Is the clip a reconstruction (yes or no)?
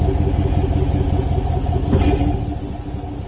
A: no